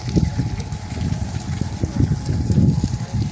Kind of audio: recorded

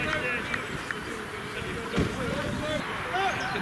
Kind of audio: recorded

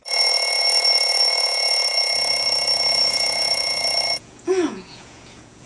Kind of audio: remade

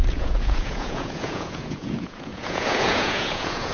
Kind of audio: remade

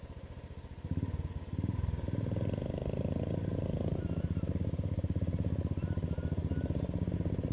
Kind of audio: recorded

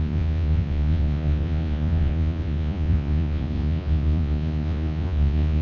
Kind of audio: remade